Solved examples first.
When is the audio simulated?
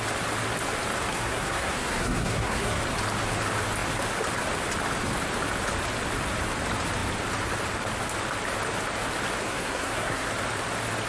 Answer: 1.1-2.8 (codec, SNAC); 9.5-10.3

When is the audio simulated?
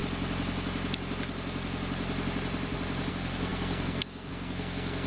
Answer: 3.1-5.1 (codec, SNAC)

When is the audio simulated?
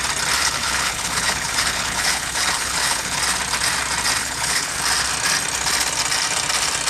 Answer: 0.4-3.2 (codec, HILCodec); 4.2-4.8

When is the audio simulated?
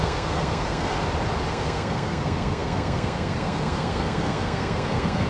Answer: 0.0-0.9 (codec, SNAC); 1.5-5.3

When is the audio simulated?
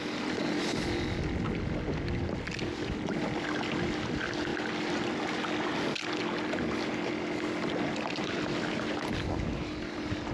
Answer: none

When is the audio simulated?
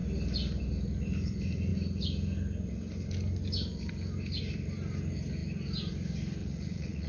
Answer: 6.4-7.1 (vocoder, Vocos)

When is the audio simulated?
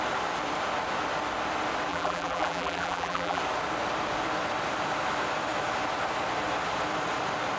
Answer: 1.9-3.4 (vocoder, BigVGAN v2)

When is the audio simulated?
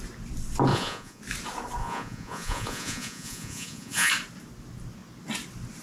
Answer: 0.7-1.2 (vocoder, Vocos); 1.8-4.1